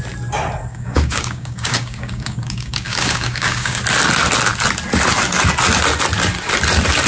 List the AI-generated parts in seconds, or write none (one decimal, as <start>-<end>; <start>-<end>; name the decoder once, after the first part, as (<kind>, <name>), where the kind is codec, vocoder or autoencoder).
0.7-3.8 (codec, DAC)